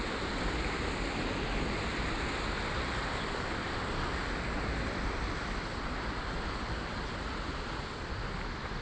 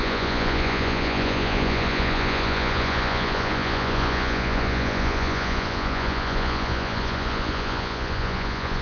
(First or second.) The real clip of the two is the first